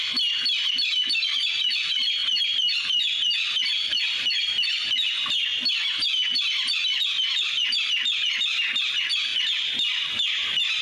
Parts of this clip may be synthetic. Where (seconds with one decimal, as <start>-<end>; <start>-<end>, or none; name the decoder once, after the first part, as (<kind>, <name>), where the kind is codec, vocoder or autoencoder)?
none